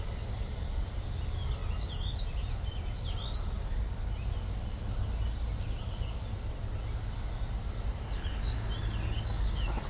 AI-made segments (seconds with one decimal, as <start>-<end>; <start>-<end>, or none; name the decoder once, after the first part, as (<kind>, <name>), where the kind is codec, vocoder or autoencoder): none